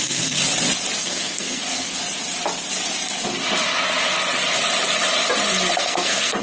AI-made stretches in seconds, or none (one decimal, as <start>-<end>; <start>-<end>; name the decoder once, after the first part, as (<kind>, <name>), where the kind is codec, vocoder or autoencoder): 0.0-0.4 (codec, SNAC); 1.0-2.0; 5.8-6.4